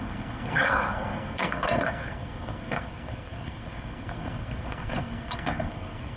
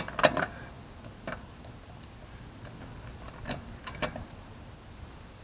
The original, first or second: second